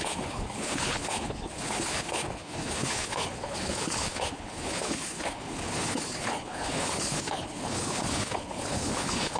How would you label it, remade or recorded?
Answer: remade